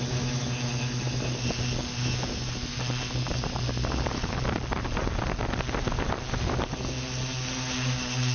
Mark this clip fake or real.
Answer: real